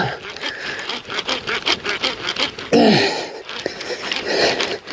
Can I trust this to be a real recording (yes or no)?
yes